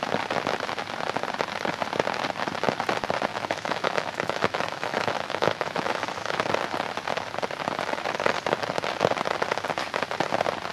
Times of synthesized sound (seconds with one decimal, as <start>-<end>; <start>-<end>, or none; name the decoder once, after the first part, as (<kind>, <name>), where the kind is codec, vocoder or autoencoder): 3.3-6.5 (autoencoder, DAC-VAE)